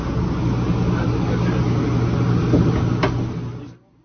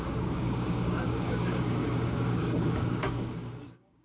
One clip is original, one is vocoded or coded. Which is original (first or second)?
first